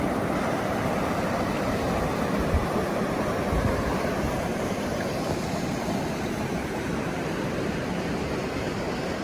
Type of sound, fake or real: real